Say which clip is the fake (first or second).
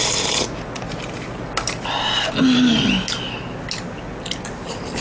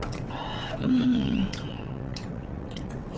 second